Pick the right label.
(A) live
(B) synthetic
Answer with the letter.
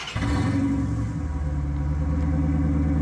A